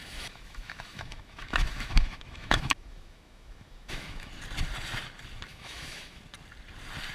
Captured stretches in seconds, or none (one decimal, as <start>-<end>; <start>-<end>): 4.3-5.5; 6.2-7.1